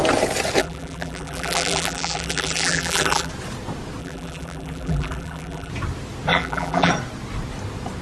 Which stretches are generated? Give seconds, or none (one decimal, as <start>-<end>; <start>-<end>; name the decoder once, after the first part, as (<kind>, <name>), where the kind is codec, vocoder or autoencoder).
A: 0.6-3.3 (vocoder, BigVGAN v2); 4.0-5.7; 6.3-6.9